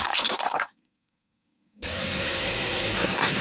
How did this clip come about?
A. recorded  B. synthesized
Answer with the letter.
B